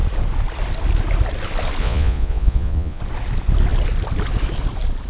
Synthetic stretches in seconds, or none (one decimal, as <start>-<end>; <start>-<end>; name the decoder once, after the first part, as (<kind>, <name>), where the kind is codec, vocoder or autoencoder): 1.8-3.0 (vocoder, Vocos)